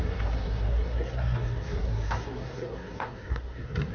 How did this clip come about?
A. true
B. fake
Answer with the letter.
B